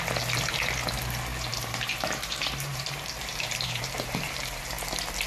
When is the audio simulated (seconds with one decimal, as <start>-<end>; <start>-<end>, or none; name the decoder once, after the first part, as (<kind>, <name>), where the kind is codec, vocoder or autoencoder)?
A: 1.5-4.6 (vocoder, BigVGAN v2)